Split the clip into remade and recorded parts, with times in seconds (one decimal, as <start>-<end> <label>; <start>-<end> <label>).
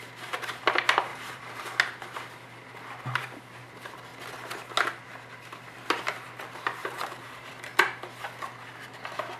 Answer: 0.0-1.1 recorded; 1.1-1.6 remade; 1.6-6.8 recorded; 6.8-7.5 remade; 7.5-9.4 recorded